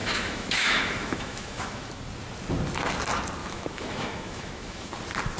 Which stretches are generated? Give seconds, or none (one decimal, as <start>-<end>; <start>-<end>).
0.0-2.0; 3.4-4.9